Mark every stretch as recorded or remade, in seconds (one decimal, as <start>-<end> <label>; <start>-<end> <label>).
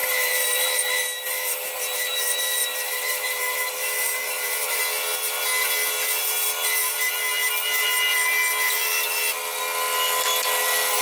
0.0-4.8 remade; 4.8-11.0 recorded